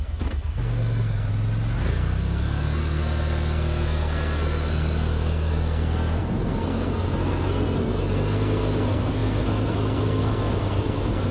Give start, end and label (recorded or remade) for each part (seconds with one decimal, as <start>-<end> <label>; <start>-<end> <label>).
0.0-1.3 remade; 1.3-1.8 recorded; 1.8-11.3 remade